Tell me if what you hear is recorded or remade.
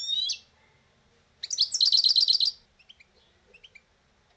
recorded